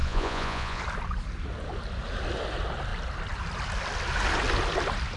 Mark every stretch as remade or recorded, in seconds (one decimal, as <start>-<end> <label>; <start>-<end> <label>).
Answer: 0.0-0.8 remade; 0.8-5.2 recorded

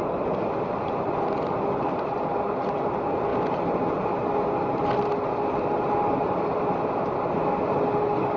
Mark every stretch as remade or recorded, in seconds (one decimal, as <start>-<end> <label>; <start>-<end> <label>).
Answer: 0.0-8.4 recorded